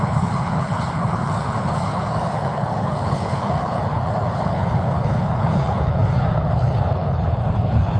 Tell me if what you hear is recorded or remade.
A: remade